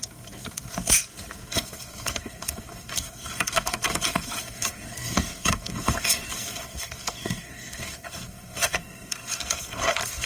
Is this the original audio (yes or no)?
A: no